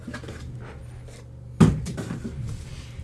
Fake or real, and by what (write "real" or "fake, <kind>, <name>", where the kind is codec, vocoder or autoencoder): real